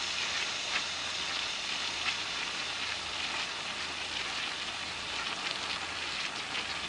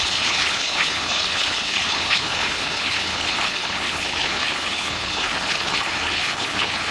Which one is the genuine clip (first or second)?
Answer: first